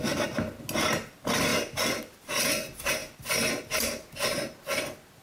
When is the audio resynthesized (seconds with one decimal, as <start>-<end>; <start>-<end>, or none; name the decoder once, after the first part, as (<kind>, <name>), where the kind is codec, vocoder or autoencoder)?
none